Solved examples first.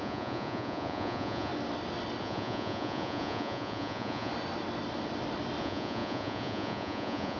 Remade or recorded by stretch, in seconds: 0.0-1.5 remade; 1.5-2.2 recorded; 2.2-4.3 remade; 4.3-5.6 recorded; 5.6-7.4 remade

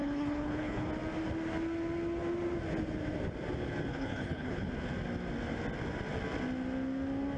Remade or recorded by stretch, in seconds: 0.0-0.9 remade; 0.9-3.9 recorded; 3.9-4.7 remade; 4.7-7.4 recorded

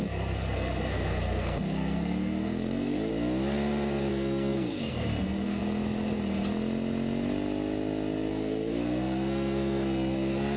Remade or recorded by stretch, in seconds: 0.0-3.1 remade; 3.1-4.1 recorded; 4.1-5.6 remade; 5.6-8.3 recorded; 8.3-10.6 remade